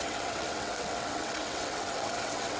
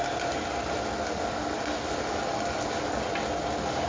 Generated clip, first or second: first